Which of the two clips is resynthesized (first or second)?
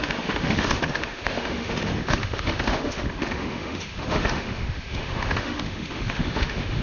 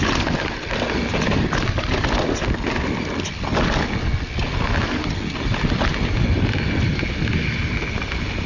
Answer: first